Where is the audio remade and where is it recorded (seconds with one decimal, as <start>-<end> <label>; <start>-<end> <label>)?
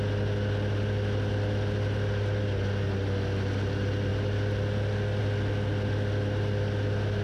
0.0-7.2 recorded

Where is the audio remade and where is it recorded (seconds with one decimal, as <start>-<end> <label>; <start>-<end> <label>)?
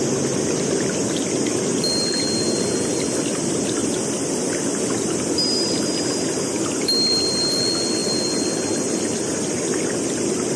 0.0-10.6 recorded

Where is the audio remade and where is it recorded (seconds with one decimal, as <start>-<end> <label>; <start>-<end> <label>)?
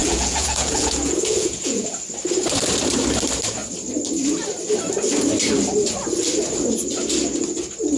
0.0-2.0 remade; 2.0-8.0 recorded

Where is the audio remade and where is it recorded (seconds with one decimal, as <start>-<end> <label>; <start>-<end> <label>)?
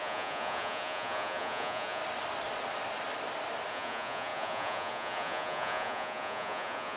0.0-2.0 remade; 2.0-3.7 recorded; 3.7-7.0 remade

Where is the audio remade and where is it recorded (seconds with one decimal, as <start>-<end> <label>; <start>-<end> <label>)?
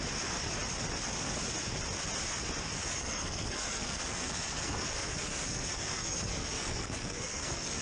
0.0-2.7 recorded; 2.7-7.8 remade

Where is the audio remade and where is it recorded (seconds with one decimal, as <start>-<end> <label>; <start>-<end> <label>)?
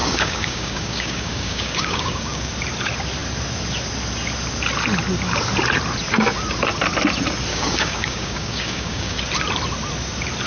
0.0-2.5 remade; 2.5-7.5 recorded; 7.5-9.2 remade; 9.2-10.5 recorded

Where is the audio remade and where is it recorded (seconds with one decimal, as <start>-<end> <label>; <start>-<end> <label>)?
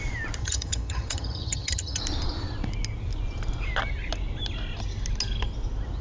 0.0-0.4 recorded; 0.4-2.0 remade; 2.0-6.0 recorded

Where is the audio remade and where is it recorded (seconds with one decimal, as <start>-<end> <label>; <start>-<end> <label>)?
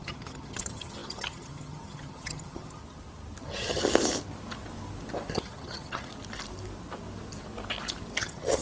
0.0-2.8 remade; 2.8-3.4 recorded; 3.4-3.8 remade; 3.8-5.4 recorded; 5.4-6.1 remade; 6.1-8.2 recorded; 8.2-8.6 remade